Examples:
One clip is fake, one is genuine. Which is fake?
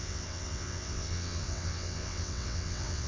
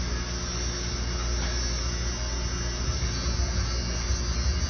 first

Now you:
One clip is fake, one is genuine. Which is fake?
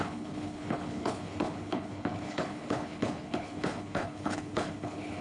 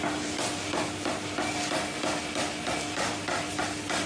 first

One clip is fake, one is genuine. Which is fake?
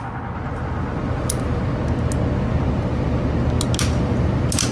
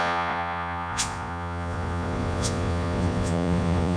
second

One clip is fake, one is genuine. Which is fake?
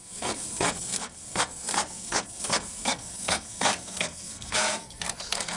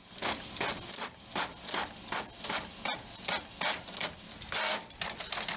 first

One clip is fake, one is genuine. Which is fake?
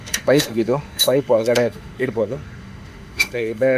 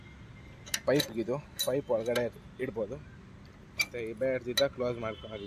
first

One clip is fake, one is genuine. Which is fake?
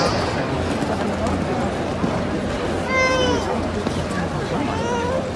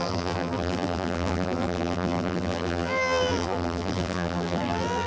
second